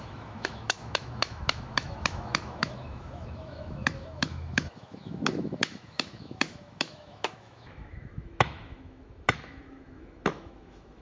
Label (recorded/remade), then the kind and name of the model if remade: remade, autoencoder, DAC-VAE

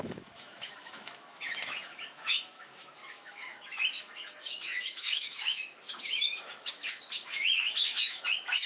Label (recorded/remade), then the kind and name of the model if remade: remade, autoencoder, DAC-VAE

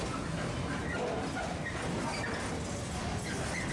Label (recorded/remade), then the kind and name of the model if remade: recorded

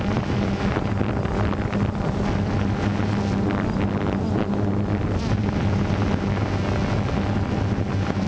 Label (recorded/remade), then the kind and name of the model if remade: recorded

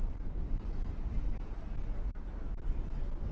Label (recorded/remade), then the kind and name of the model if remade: recorded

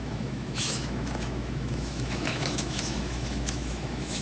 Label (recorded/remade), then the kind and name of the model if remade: remade, autoencoder, DAC-VAE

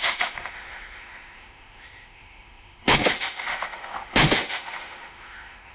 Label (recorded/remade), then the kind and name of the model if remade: remade, autoencoder, DAC-VAE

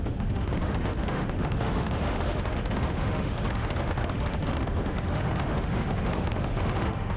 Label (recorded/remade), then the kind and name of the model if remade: remade, autoencoder, DAC-VAE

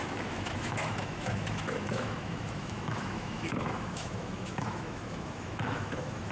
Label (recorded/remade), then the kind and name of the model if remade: remade, autoencoder, DAC-VAE